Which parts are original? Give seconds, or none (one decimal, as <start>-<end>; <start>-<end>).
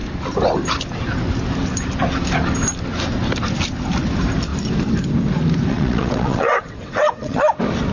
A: 0.0-5.7; 7.4-7.9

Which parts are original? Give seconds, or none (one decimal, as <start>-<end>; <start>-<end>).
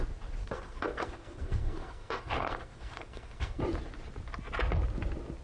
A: 0.0-0.4; 3.6-5.4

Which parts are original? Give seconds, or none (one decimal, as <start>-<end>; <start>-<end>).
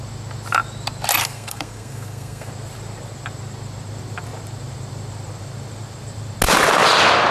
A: 0.0-1.2; 2.5-7.3